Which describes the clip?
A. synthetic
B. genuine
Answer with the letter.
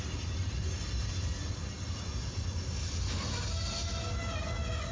B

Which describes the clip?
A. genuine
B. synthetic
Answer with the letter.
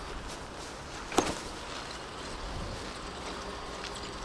A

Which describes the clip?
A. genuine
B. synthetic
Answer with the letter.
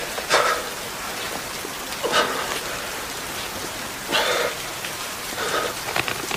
A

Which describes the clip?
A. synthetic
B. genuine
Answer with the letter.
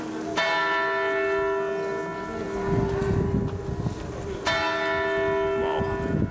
B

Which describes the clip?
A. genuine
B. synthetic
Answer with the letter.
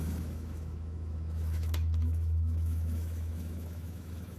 B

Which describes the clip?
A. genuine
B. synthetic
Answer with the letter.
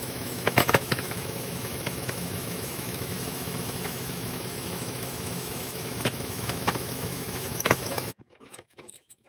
B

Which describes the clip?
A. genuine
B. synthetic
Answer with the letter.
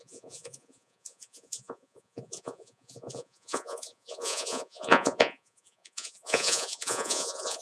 B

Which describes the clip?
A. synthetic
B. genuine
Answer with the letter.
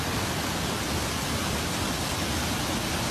B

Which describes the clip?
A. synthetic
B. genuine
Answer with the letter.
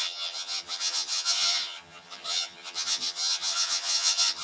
A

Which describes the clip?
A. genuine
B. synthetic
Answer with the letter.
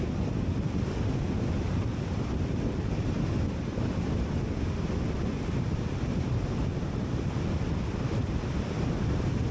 A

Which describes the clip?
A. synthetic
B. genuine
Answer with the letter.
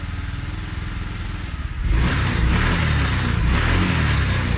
B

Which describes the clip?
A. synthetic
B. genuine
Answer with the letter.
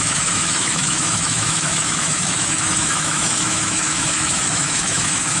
A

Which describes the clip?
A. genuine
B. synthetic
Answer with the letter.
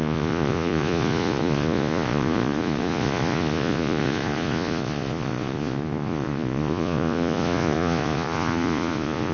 B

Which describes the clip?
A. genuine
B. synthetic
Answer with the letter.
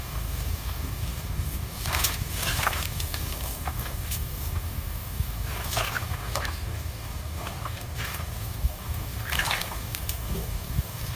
B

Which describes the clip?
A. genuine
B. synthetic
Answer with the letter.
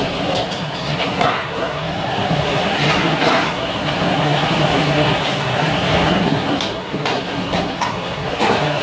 B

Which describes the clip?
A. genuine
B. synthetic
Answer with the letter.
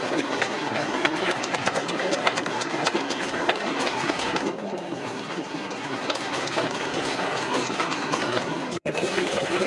B